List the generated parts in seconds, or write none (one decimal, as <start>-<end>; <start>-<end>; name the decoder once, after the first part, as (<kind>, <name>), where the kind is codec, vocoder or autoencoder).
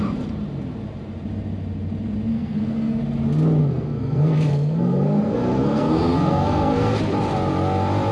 2.3-3.0 (codec, SNAC); 3.6-7.0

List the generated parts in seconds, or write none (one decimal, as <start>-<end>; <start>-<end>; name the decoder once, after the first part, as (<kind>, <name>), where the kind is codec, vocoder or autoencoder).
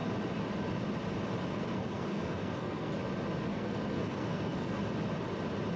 1.5-2.9 (codec, SNAC); 3.5-4.8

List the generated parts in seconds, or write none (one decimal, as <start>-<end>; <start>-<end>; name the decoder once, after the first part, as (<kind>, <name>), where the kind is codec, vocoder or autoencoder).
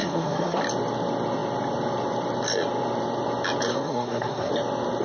0.0-0.6 (codec, SNAC); 3.7-4.5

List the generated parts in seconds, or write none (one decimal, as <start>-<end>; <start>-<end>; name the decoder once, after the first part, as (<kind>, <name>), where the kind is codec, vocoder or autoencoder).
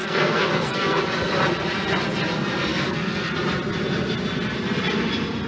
0.0-1.0 (codec, SNAC); 2.7-3.3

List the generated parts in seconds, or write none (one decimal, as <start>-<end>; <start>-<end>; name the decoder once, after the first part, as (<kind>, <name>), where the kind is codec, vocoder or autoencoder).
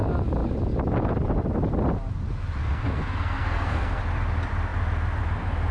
2.6-4.0 (codec, SNAC)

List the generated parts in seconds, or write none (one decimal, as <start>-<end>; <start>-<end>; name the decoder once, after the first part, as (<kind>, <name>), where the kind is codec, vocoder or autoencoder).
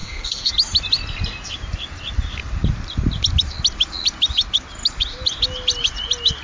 0.0-0.5 (codec, SNAC)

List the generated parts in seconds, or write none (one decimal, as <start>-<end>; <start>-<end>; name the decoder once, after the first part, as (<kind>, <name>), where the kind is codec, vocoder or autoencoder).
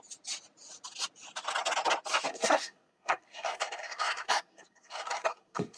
2.3-5.8 (codec, SNAC)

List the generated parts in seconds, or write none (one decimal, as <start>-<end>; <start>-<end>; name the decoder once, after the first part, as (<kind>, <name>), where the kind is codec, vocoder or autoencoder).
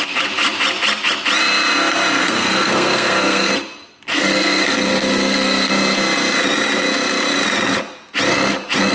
2.2-3.5 (codec, SNAC); 4.1-5.7